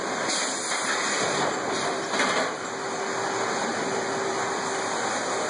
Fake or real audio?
real